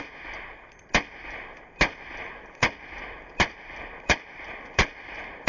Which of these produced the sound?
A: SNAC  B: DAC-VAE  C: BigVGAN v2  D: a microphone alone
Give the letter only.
D